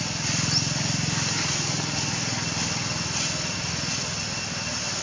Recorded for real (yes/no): yes